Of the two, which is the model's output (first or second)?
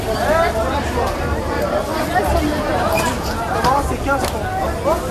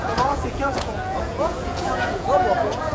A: second